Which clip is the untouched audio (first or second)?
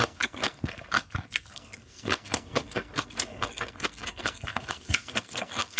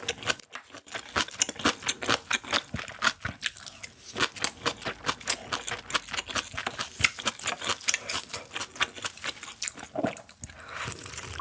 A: second